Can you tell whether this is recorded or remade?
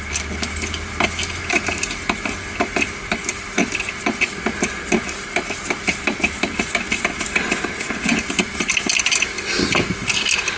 recorded